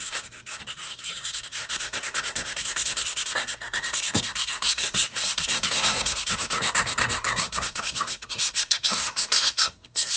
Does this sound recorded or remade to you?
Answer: remade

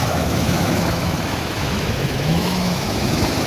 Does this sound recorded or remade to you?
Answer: remade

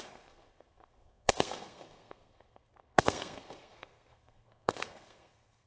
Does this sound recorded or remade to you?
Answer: remade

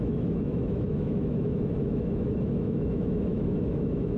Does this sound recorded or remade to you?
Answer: remade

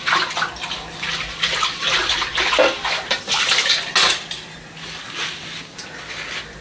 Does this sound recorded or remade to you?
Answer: recorded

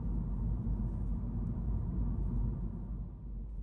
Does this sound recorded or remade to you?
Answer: recorded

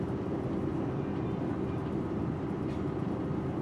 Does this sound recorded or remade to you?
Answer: remade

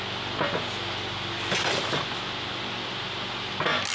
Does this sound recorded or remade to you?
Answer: recorded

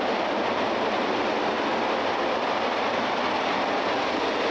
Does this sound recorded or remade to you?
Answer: recorded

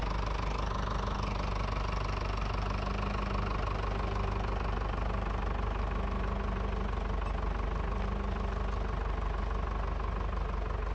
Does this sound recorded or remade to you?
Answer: recorded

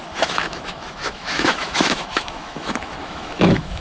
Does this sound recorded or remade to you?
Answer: remade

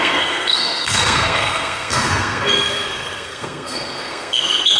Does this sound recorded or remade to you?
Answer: remade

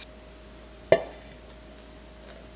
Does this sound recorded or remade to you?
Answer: recorded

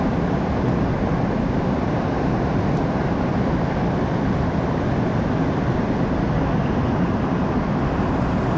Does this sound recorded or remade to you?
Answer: recorded